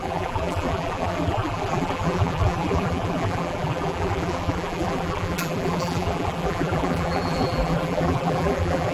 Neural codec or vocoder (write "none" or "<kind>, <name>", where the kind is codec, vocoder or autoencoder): vocoder, BigVGAN v2